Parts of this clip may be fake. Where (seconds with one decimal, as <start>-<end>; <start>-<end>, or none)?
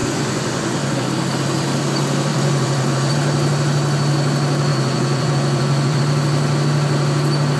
0.0-1.1; 2.3-3.1; 4.7-6.0